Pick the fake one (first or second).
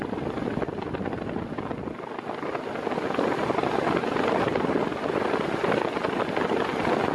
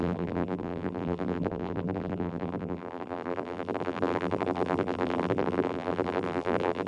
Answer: second